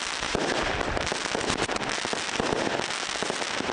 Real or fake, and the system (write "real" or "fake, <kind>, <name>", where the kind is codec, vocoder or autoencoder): real